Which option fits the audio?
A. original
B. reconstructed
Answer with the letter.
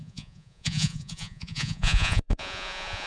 B